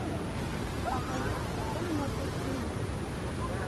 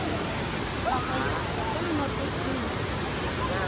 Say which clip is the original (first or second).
second